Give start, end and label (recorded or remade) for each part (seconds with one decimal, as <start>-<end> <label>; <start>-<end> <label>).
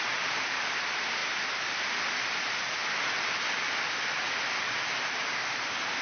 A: 0.0-6.0 recorded